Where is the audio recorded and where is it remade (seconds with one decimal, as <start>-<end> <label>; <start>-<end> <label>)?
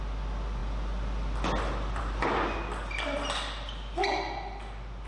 0.0-5.1 recorded